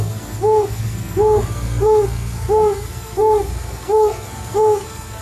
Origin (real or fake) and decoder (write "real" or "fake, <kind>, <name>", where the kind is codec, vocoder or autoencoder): fake, codec, SNAC